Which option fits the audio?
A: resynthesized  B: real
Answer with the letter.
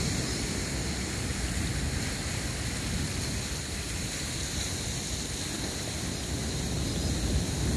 B